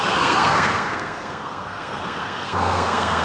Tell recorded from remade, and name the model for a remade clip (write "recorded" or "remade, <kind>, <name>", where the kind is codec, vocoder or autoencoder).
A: remade, codec, SNAC